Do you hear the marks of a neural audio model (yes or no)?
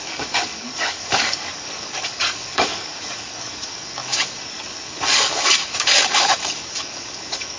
yes